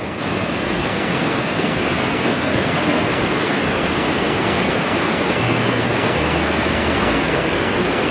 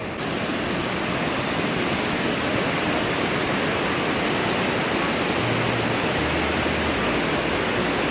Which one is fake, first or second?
first